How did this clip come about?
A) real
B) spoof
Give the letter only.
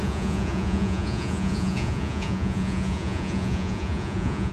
B